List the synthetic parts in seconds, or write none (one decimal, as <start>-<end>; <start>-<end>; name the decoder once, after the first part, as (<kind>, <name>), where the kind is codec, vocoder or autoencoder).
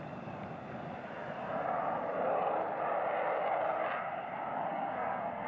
4.7-5.5 (codec, SNAC)